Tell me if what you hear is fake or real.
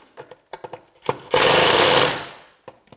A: real